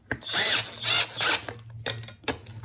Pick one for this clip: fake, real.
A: real